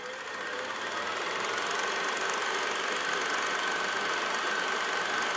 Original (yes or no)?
yes